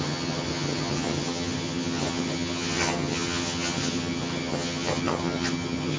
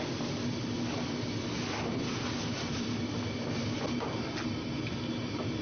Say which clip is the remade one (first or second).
first